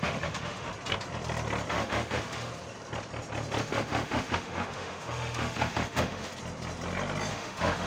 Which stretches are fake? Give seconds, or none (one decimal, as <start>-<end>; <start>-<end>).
0.0-0.7; 1.7-2.5; 3.6-6.3; 7.3-7.9